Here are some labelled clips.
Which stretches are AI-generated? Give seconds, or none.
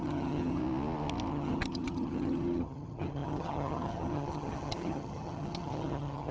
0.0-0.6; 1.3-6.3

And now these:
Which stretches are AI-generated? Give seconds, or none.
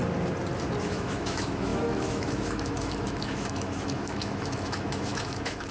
0.9-5.7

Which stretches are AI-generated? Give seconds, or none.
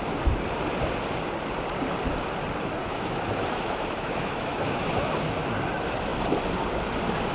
2.8-5.2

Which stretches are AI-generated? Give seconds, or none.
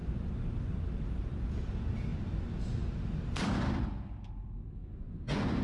4.8-5.6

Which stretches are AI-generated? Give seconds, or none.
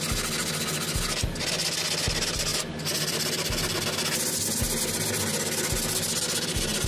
none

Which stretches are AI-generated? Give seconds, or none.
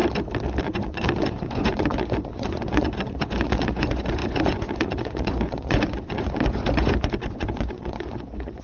0.6-8.6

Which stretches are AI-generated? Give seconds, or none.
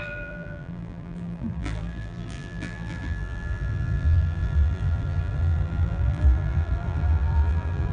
0.0-7.9